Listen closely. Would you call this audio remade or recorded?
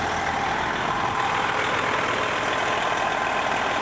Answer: recorded